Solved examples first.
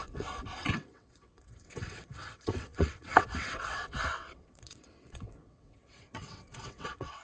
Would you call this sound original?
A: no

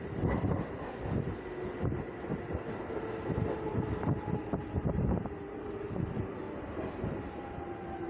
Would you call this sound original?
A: yes